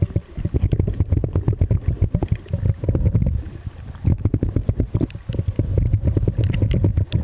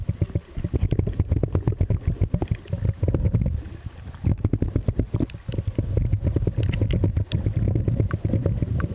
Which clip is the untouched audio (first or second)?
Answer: second